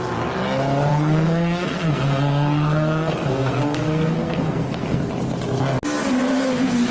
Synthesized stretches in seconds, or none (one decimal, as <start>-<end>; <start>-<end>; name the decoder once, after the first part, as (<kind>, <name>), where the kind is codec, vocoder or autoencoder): 0.9-5.0 (codec, SNAC)